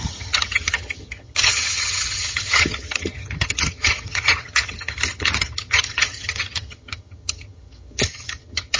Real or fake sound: fake